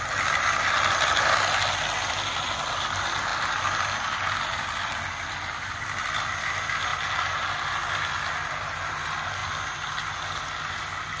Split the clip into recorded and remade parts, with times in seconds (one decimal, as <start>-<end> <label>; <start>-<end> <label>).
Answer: 0.0-11.2 recorded